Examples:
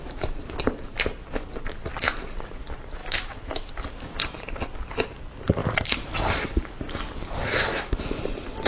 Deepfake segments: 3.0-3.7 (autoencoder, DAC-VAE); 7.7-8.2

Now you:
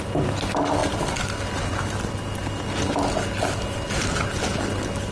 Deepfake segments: none